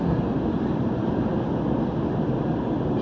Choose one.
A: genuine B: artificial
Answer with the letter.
A